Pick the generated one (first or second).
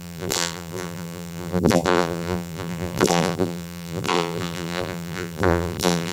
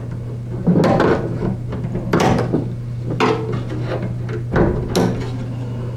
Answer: first